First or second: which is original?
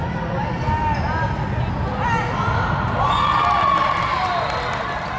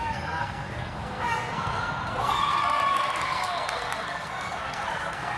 first